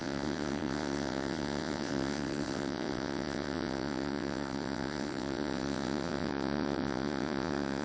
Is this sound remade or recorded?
remade